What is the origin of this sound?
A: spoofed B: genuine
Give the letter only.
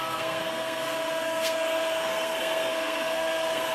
A